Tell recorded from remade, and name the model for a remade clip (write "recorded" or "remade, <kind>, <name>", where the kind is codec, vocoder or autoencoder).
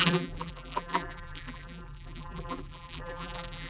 remade, vocoder, BigVGAN v2